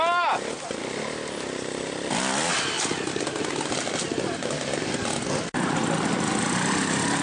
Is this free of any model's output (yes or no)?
yes